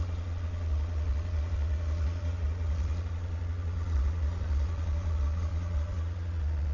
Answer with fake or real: fake